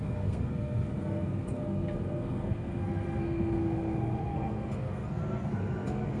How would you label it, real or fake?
fake